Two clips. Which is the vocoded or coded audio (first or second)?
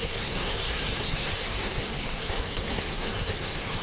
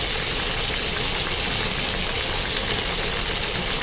first